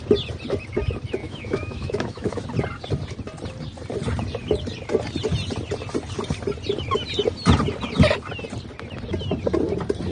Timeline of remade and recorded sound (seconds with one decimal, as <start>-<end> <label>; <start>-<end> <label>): 0.0-1.2 recorded; 1.2-2.4 remade; 2.4-10.1 recorded

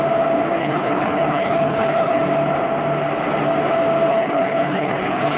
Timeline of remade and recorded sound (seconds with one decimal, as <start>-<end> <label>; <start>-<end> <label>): 0.0-0.6 recorded; 0.6-2.2 remade; 2.2-4.1 recorded; 4.1-5.4 remade

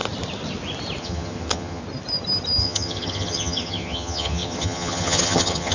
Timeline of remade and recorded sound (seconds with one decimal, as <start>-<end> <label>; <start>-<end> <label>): 0.0-1.0 recorded; 1.0-1.8 remade; 1.8-2.6 recorded; 2.6-5.7 remade

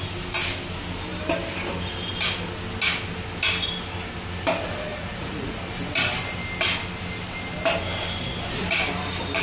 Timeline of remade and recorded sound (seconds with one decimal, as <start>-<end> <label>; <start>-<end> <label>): 0.0-4.9 recorded; 4.9-5.6 remade; 5.6-9.4 recorded

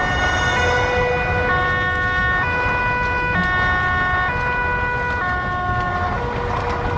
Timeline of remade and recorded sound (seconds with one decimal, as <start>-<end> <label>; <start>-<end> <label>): 0.0-7.0 recorded

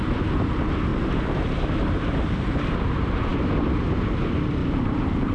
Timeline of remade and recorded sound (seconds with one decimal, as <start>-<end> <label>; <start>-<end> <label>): 0.0-0.9 recorded; 0.9-2.5 remade; 2.5-4.6 recorded; 4.6-5.3 remade